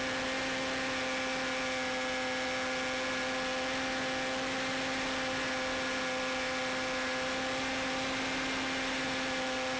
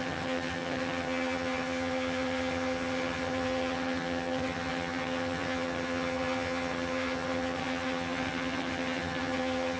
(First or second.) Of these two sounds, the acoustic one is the first